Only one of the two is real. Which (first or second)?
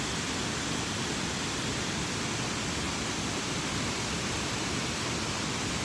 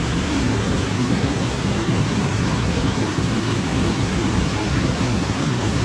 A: first